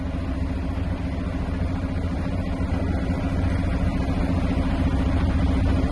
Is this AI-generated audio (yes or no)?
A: no